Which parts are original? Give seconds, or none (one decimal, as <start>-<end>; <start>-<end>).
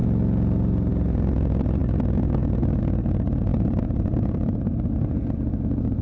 0.0-3.5; 5.6-6.0